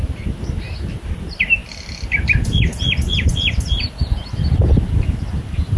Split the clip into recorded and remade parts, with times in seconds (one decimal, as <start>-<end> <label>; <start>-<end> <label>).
0.0-5.8 recorded

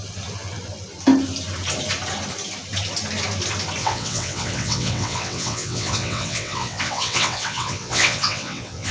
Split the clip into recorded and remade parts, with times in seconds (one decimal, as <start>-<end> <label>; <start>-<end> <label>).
0.0-3.8 recorded; 3.8-8.9 remade

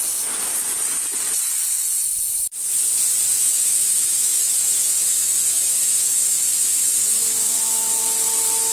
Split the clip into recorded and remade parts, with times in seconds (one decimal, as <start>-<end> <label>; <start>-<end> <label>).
0.0-3.3 recorded; 3.3-8.0 remade; 8.0-8.7 recorded

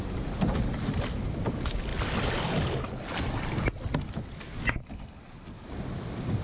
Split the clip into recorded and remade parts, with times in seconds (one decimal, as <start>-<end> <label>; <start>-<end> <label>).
0.0-6.4 recorded

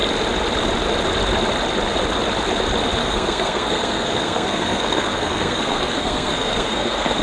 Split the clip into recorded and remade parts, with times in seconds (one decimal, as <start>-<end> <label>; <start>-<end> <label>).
0.0-3.0 recorded; 3.0-7.2 remade

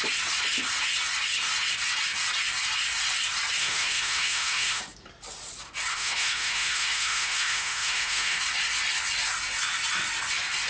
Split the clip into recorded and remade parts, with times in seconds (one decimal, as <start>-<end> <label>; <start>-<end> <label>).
0.0-3.6 recorded; 3.6-4.8 remade; 4.8-5.9 recorded; 5.9-8.4 remade; 8.4-10.7 recorded